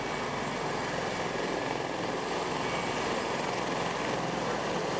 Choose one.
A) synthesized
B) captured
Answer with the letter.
B